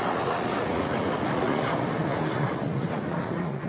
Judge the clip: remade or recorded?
remade